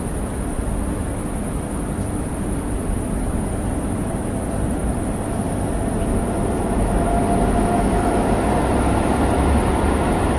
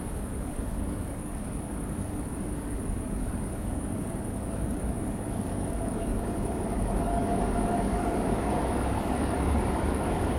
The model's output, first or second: second